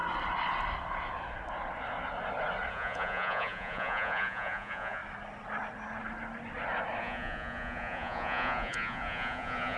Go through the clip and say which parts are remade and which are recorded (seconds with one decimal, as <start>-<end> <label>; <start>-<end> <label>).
0.0-2.7 recorded; 2.7-5.0 remade; 5.0-7.0 recorded; 7.0-9.8 remade